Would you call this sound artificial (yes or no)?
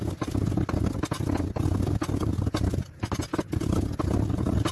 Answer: no